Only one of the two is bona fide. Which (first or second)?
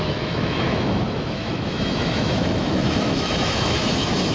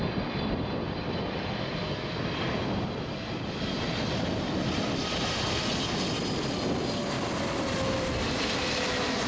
second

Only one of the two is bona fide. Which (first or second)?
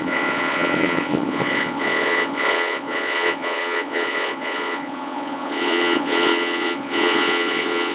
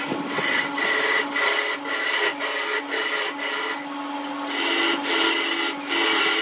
second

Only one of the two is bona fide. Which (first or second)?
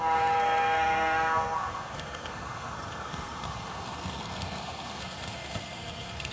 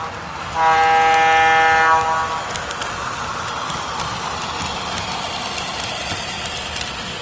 second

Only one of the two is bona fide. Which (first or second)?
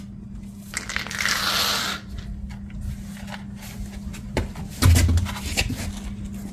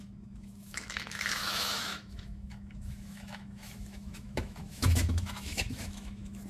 first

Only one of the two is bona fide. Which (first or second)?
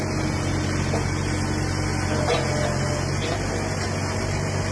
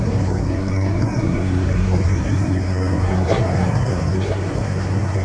first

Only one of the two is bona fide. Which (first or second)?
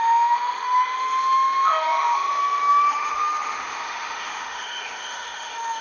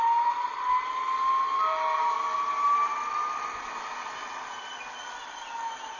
second